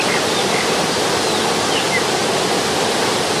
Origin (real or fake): real